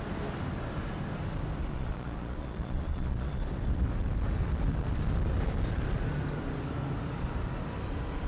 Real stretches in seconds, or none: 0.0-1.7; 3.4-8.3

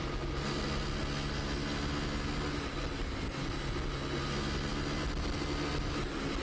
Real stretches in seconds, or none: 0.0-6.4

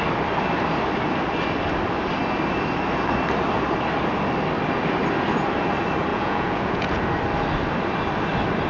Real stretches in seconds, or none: 0.0-6.1; 7.0-8.7